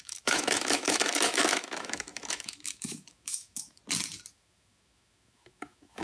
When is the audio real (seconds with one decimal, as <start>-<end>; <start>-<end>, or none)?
3.8-4.3